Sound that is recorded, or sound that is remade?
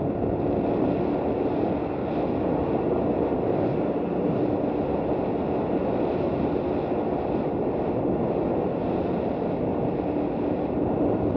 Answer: recorded